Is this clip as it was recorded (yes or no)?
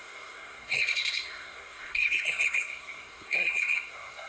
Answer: no